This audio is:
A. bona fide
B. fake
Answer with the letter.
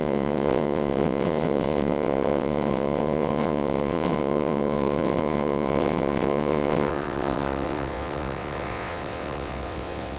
B